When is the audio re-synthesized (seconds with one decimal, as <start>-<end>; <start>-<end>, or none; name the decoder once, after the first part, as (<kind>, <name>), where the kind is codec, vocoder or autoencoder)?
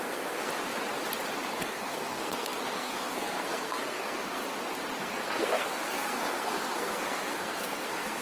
0.0-0.5 (codec, SNAC); 1.6-4.4; 5.0-8.2